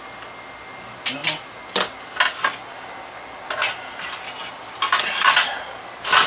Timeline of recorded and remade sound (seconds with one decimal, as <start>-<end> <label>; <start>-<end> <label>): 0.0-6.3 recorded